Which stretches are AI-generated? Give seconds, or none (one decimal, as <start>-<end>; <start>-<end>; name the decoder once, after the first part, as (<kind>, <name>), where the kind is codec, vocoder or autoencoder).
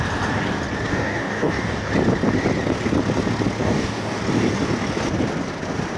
0.9-1.9 (codec, DAC); 3.6-4.2